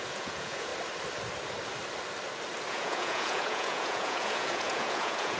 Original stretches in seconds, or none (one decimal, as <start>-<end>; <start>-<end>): 0.7-2.7